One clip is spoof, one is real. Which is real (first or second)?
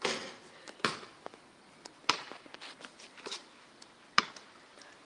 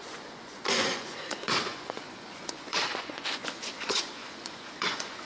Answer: first